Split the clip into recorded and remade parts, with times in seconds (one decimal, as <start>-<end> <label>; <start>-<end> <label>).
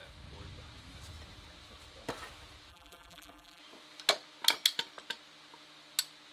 0.0-2.7 recorded; 2.7-3.6 remade; 3.6-6.3 recorded